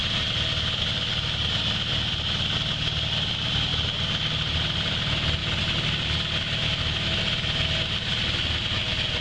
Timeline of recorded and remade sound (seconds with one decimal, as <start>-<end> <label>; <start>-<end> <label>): 0.0-9.2 recorded